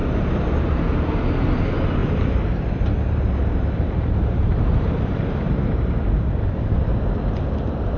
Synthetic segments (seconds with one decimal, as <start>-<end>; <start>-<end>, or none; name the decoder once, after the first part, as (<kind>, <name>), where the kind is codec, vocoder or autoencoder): 0.0-1.1 (vocoder, BigVGAN v2); 2.0-6.7